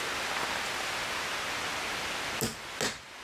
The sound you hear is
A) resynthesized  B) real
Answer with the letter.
B